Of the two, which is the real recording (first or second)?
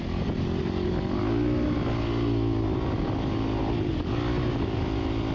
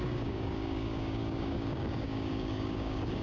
first